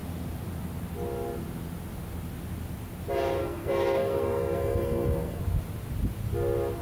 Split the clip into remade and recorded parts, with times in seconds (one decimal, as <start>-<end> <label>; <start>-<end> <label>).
0.0-3.4 recorded; 3.4-5.4 remade; 5.4-6.8 recorded